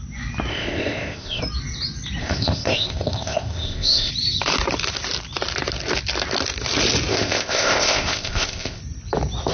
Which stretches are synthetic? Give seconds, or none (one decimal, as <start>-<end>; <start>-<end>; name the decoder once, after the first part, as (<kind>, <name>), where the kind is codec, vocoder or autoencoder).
0.5-1.4 (codec, ZipCodec); 2.2-4.1; 7.1-8.8